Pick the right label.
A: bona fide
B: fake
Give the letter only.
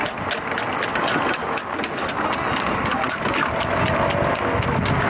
A